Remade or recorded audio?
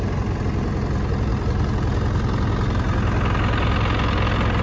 recorded